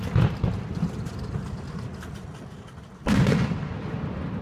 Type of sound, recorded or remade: recorded